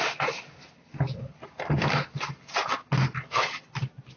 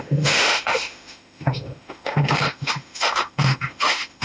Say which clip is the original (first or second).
first